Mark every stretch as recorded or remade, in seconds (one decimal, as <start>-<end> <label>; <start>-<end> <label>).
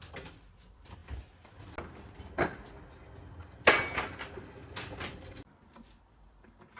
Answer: 0.0-6.8 recorded